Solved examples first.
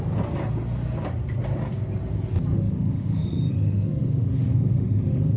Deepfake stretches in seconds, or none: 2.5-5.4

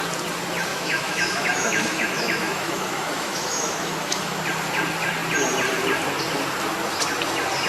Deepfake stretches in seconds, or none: 0.7-4.4

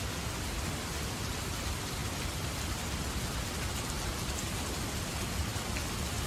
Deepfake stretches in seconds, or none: none

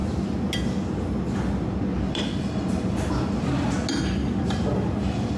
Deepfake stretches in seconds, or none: none

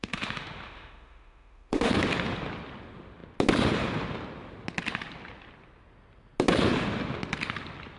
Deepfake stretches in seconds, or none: 0.0-1.9

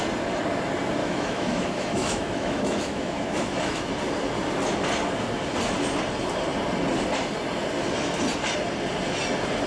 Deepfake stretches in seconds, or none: 1.0-3.9